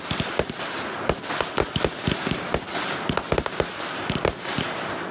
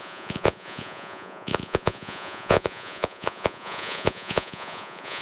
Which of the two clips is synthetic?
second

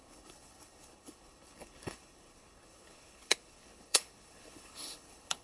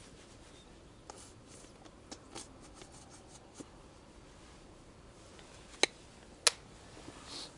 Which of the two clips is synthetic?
first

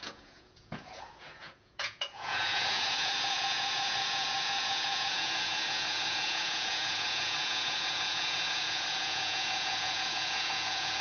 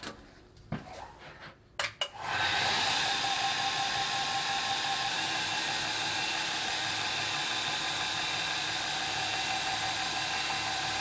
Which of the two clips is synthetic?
first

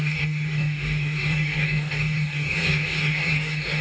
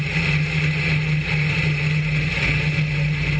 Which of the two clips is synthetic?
first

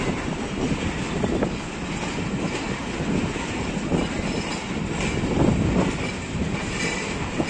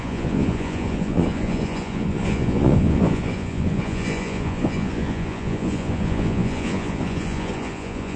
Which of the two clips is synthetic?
second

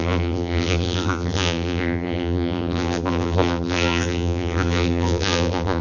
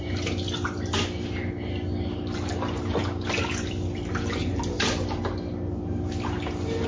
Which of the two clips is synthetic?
first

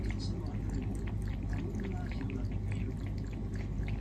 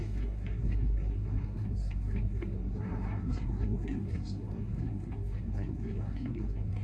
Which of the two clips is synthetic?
second